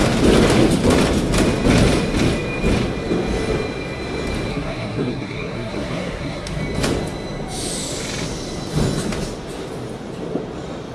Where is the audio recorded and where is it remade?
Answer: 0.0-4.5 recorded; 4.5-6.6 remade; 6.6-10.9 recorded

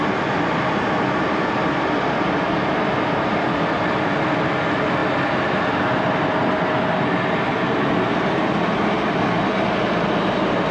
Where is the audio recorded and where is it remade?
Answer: 0.0-10.7 recorded

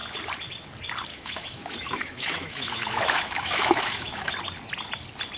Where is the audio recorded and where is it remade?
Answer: 0.0-1.1 recorded; 1.1-4.3 remade; 4.3-5.4 recorded

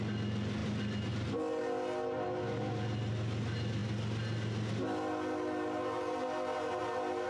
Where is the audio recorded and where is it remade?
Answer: 0.0-7.3 recorded

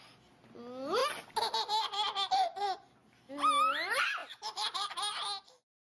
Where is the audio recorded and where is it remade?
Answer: 0.0-5.9 recorded